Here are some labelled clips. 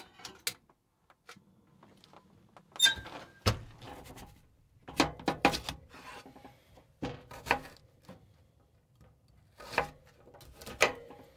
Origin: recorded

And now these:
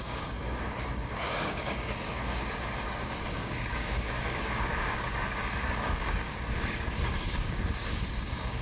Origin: remade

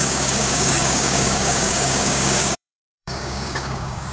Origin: remade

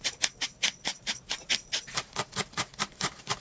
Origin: recorded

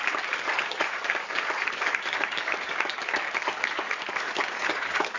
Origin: remade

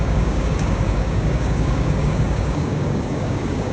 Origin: remade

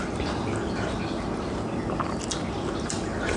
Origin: recorded